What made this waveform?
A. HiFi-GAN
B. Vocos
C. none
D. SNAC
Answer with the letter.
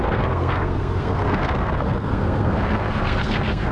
D